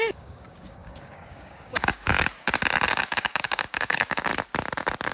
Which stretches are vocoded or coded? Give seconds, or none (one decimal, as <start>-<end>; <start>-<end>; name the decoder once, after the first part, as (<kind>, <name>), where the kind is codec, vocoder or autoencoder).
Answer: 0.0-2.1 (codec, DAC); 2.9-4.3